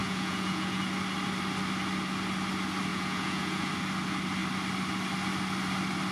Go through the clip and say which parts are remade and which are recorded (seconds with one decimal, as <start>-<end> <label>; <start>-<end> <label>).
0.0-0.8 remade; 0.8-2.9 recorded; 2.9-3.7 remade; 3.7-6.1 recorded

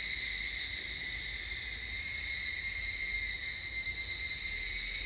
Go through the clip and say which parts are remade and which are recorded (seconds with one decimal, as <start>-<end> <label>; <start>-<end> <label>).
0.0-5.1 recorded